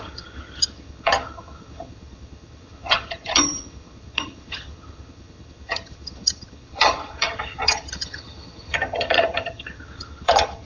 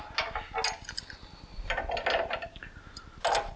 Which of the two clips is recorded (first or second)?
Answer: second